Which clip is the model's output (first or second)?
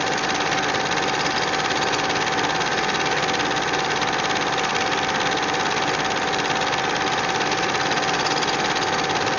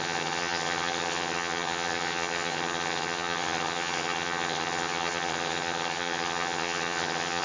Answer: second